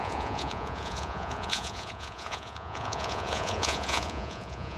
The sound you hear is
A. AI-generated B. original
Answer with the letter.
A